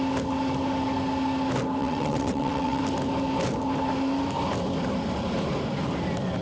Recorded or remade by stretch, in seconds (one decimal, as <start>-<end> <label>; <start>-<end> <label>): 0.0-1.8 recorded; 1.8-2.8 remade; 2.8-6.4 recorded